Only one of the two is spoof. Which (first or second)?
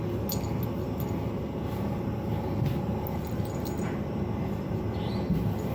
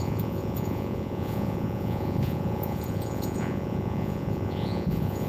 second